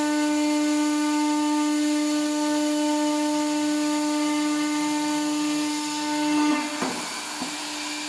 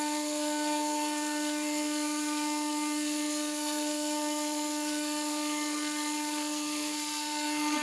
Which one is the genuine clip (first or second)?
first